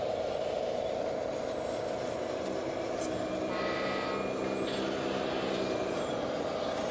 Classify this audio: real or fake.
real